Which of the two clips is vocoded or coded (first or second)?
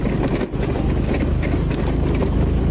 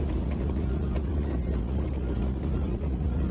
second